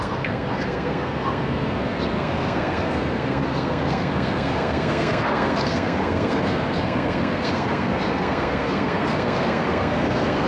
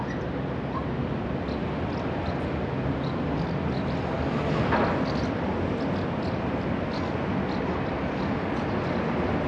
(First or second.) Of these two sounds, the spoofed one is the first